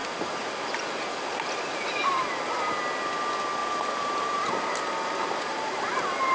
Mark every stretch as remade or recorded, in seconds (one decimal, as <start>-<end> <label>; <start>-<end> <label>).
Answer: 0.0-3.6 recorded; 3.6-4.7 remade; 4.7-6.3 recorded